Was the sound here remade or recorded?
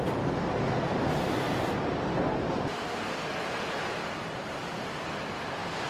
recorded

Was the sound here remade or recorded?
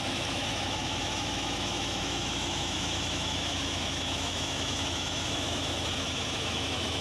remade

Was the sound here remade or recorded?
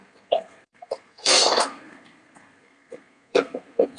remade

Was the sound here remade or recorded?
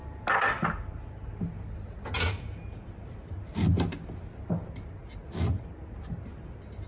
recorded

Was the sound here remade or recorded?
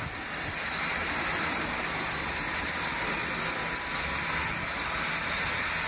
recorded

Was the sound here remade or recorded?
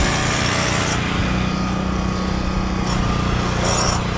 recorded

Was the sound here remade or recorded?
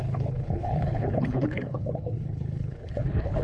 remade